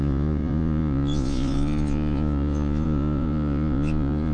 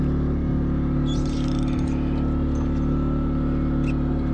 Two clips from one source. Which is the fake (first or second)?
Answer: first